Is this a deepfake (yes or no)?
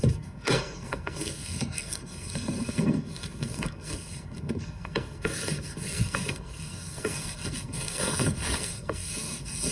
yes